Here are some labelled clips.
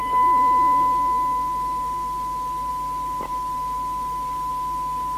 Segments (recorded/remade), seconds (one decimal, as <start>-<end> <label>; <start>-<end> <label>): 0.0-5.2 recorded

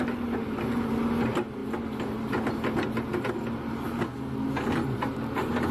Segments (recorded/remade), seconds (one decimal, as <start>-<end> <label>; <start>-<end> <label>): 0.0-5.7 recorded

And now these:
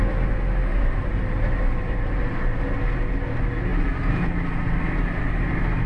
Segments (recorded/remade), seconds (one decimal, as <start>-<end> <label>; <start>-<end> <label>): 0.0-0.7 recorded; 0.7-2.6 remade; 2.6-5.9 recorded